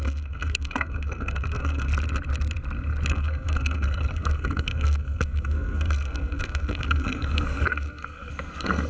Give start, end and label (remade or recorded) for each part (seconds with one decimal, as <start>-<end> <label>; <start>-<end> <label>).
0.0-1.9 remade; 1.9-3.1 recorded; 3.1-8.9 remade